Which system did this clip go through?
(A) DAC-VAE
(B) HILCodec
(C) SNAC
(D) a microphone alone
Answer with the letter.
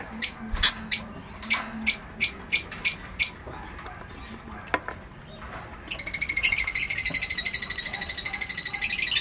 D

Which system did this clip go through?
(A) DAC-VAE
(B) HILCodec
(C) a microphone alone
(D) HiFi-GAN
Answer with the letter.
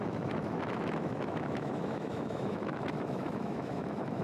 A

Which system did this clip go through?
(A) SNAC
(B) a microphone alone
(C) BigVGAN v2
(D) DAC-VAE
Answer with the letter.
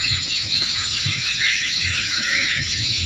D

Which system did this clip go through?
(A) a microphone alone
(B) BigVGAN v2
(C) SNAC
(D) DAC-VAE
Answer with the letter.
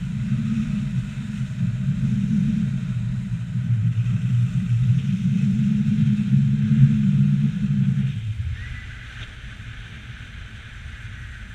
A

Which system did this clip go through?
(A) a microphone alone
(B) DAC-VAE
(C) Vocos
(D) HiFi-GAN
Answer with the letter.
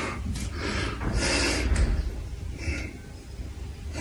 A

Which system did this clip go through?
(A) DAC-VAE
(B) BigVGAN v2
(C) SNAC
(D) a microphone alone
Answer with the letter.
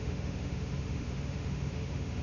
A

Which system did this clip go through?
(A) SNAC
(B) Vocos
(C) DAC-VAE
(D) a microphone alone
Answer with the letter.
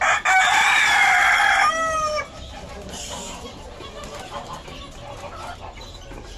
D